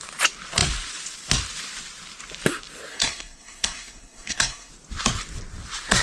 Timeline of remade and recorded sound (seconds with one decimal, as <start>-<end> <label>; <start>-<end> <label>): 0.0-2.9 recorded; 2.9-4.7 remade; 4.7-6.0 recorded